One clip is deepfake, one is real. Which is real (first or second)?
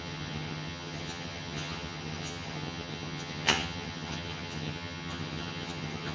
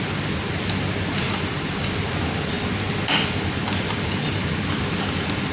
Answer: second